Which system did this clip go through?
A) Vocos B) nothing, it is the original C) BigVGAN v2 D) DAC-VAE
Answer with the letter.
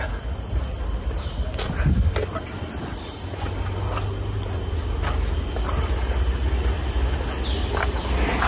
B